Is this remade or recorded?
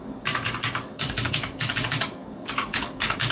remade